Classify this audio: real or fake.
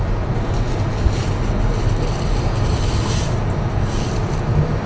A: real